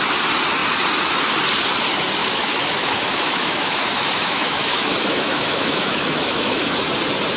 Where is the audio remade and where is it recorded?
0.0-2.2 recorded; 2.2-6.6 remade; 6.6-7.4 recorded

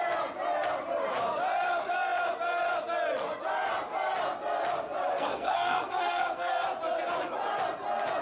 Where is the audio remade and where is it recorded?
0.0-5.1 recorded; 5.1-6.5 remade; 6.5-8.2 recorded

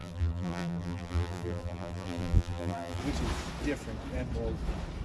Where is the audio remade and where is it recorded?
0.0-3.0 remade; 3.0-5.0 recorded

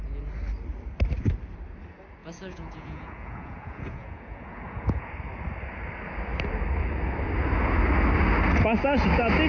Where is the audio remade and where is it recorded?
0.0-2.2 recorded; 2.2-5.1 remade; 5.1-9.5 recorded

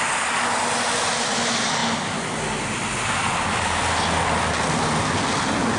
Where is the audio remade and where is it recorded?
0.0-5.8 recorded

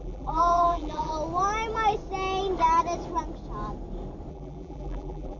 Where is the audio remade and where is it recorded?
0.0-1.1 remade; 1.1-4.3 recorded; 4.3-5.4 remade